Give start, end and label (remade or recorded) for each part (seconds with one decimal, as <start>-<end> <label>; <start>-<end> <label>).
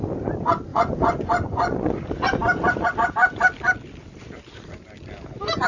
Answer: 0.0-0.7 recorded; 0.7-2.0 remade; 2.0-5.7 recorded